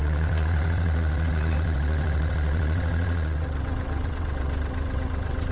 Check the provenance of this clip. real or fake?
fake